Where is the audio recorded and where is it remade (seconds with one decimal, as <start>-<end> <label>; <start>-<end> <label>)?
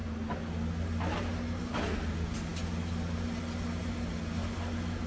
0.0-5.1 recorded